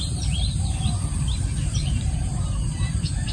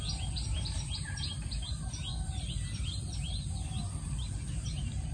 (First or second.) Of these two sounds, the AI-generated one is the first